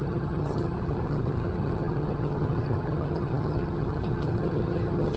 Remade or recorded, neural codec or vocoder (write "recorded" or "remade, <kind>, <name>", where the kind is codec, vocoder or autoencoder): remade, vocoder, HiFi-GAN